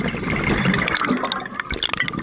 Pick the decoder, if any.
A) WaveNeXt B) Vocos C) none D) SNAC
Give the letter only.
C